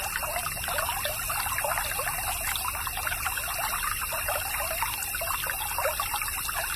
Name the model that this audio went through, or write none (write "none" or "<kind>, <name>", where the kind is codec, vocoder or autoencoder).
none